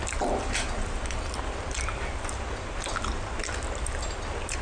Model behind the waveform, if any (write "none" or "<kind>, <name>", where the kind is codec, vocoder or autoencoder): none